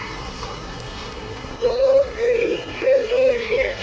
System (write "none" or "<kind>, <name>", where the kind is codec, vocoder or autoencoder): codec, SNAC